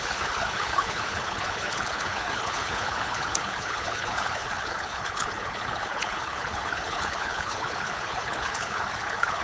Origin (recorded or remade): remade